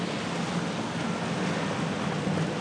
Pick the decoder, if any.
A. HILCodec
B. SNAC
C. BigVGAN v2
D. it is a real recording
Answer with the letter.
D